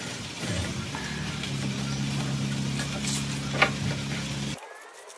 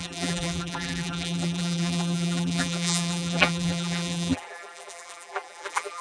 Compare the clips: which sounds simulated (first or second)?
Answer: second